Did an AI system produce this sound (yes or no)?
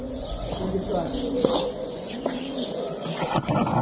yes